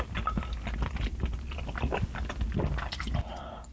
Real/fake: real